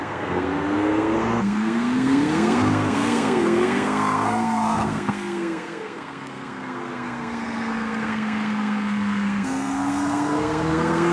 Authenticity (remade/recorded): remade